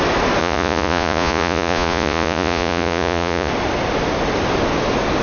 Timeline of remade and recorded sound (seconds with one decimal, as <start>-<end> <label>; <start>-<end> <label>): 0.0-0.4 recorded; 0.4-3.5 remade; 3.5-5.2 recorded